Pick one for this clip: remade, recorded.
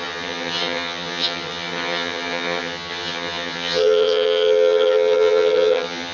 remade